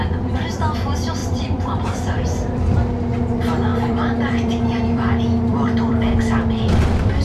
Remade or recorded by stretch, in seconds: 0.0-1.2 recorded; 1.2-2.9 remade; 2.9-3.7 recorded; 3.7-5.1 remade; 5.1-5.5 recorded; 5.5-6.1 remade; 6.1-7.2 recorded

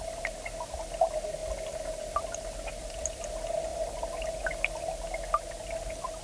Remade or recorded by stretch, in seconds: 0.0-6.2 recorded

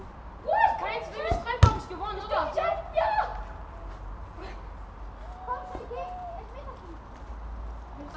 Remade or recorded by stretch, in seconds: 0.0-8.2 recorded

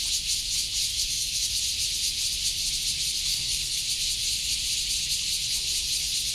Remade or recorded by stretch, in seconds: 0.0-0.9 recorded; 0.9-1.5 remade; 1.5-3.3 recorded; 3.3-3.8 remade; 3.8-6.3 recorded

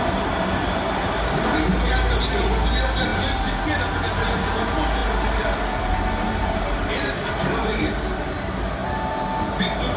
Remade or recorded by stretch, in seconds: 0.0-10.0 recorded